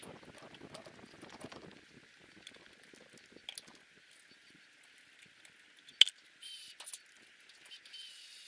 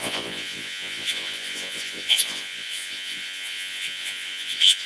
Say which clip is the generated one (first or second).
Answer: second